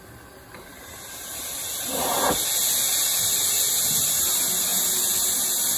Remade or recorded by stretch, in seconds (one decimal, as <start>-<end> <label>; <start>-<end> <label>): 0.0-0.7 recorded; 0.7-4.2 remade; 4.2-5.8 recorded